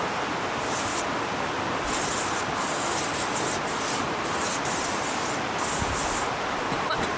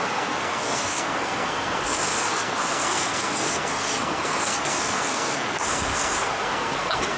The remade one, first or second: second